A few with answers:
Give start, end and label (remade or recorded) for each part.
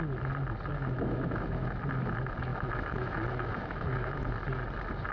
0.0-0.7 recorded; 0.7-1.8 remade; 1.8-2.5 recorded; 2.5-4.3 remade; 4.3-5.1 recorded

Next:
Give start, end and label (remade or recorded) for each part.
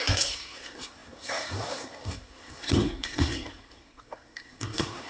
0.0-5.1 remade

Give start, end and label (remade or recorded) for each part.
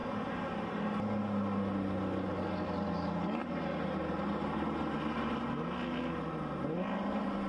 0.0-7.5 recorded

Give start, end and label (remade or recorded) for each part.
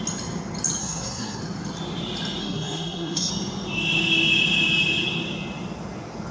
0.0-0.8 recorded; 0.8-1.4 remade; 1.4-2.4 recorded; 2.4-3.3 remade; 3.3-6.3 recorded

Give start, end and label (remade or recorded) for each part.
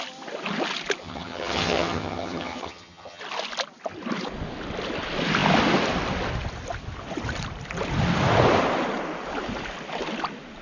0.0-1.0 recorded; 1.0-3.2 remade; 3.2-10.6 recorded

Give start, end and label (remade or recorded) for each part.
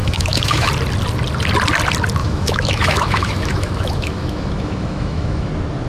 0.0-0.7 remade; 0.7-2.2 recorded; 2.2-5.5 remade; 5.5-5.9 recorded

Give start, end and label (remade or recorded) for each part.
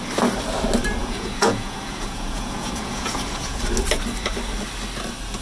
0.0-1.0 recorded; 1.0-3.6 remade; 3.6-5.4 recorded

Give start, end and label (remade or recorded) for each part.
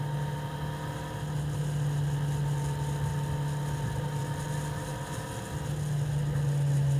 0.0-3.1 remade; 3.1-4.2 recorded; 4.2-4.9 remade; 4.9-6.3 recorded; 6.3-7.0 remade